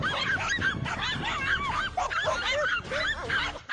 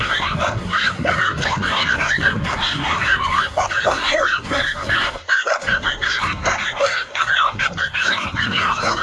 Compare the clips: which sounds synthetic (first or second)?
second